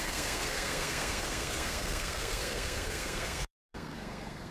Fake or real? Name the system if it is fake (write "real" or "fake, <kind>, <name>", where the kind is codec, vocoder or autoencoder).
fake, codec, SNAC